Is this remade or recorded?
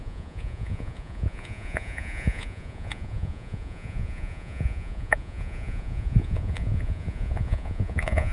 remade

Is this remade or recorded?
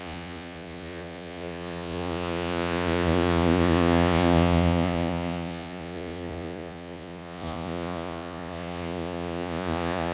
remade